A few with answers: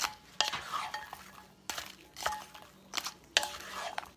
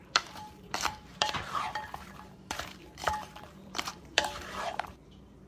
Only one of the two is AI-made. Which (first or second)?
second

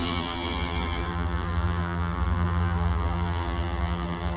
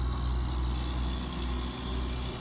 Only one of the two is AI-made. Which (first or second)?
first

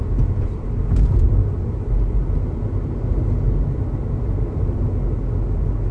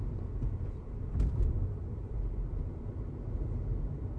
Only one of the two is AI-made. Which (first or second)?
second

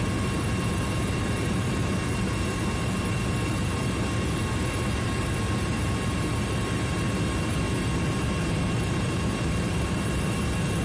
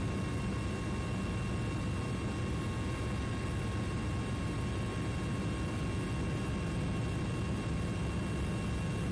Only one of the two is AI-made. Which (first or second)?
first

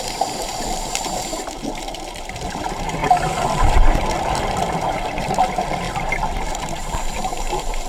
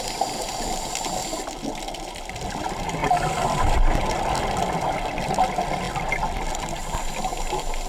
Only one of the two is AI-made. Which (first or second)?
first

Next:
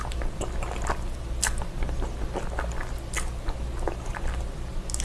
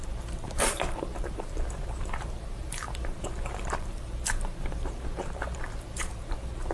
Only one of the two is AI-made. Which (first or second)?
second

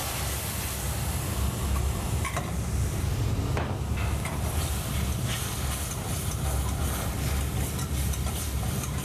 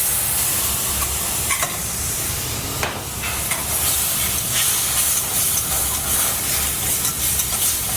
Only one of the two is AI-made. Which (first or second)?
second